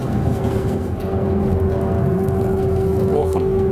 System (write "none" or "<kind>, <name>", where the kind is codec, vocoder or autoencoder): codec, SNAC